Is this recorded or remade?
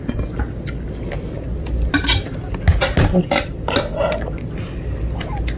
recorded